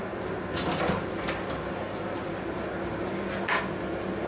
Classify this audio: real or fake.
real